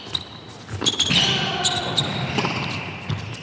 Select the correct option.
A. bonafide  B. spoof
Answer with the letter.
A